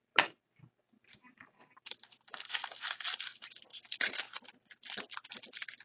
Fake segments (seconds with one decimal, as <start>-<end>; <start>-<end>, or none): none